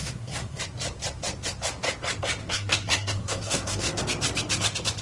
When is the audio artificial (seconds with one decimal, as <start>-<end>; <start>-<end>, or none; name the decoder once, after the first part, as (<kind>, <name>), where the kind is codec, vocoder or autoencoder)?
0.0-0.6 (codec, SNAC); 2.4-4.0